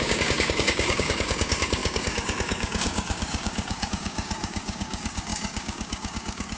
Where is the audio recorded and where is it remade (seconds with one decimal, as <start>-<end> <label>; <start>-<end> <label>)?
0.0-6.6 remade